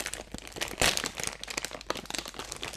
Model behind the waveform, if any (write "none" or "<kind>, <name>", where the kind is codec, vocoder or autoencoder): none